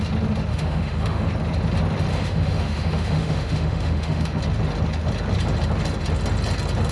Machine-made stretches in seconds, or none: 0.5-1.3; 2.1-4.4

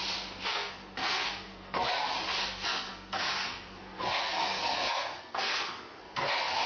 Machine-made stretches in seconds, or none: 0.5-1.9; 2.4-6.3

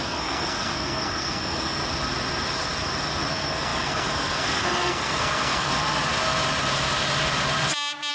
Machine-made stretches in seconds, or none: 0.0-1.8; 3.3-5.7

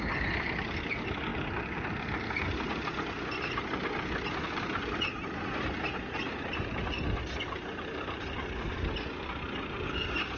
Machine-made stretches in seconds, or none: none

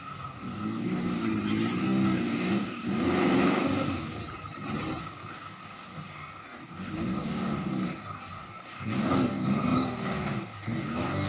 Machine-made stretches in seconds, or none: 0.0-1.3; 1.8-4.2; 5.0-11.3

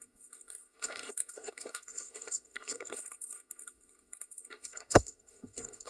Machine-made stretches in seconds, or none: 0.0-5.9